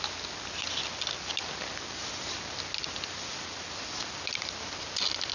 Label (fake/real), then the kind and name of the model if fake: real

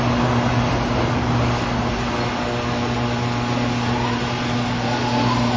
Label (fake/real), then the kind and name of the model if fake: real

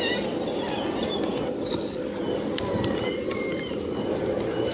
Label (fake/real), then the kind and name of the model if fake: real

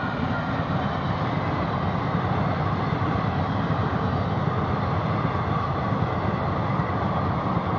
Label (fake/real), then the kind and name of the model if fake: real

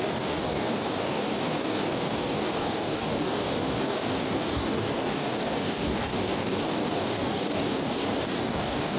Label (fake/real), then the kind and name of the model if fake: fake, codec, DAC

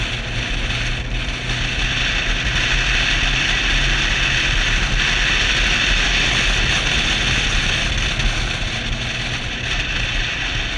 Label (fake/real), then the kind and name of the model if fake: real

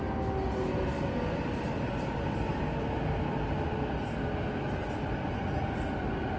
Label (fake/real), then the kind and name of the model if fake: real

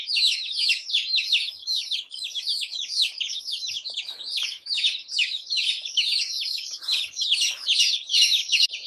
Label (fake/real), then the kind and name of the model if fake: fake, codec, DAC